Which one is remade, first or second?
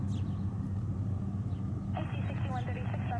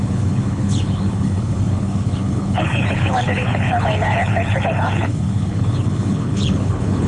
second